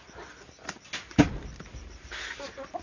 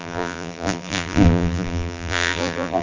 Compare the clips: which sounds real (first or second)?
first